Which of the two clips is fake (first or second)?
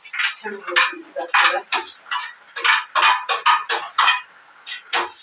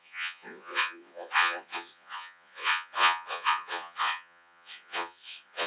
second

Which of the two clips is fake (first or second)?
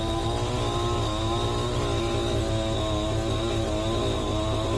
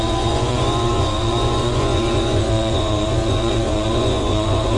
second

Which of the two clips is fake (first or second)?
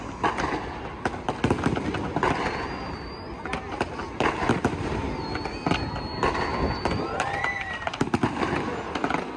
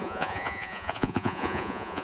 second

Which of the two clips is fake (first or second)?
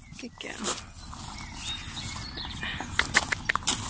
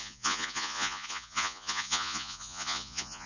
second